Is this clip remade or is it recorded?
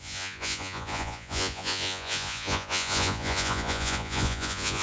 remade